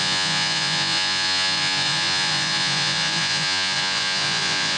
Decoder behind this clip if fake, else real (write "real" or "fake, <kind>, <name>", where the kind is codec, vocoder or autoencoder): fake, vocoder, Vocos